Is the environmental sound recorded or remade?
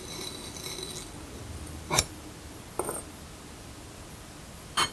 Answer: recorded